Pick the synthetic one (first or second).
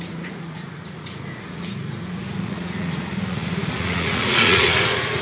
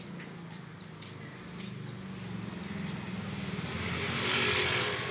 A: first